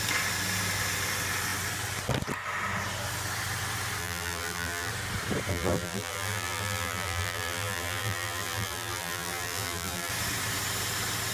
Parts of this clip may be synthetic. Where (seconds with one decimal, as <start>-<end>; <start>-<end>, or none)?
4.0-4.9; 5.5-10.1